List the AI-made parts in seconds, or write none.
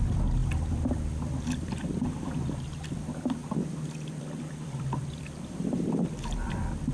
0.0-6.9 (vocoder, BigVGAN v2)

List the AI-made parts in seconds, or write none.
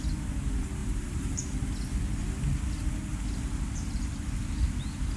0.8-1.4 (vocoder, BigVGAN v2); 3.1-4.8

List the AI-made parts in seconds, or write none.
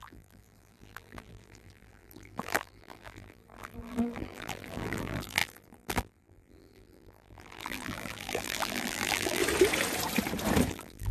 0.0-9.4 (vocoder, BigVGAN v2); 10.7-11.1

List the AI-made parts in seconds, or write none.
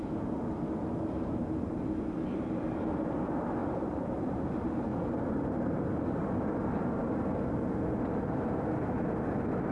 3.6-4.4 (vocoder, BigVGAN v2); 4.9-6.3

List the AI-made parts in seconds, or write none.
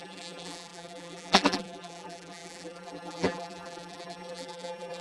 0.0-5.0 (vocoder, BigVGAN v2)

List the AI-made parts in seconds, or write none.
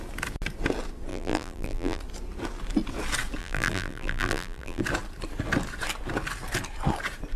1.1-2.0 (vocoder, BigVGAN v2); 3.4-4.8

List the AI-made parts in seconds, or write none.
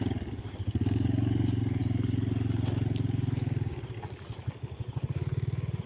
none